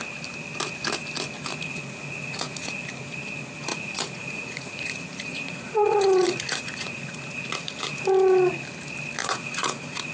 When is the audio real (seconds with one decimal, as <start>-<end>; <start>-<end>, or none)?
0.0-1.5; 2.8-3.7; 8.0-9.2